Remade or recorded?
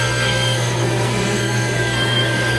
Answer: remade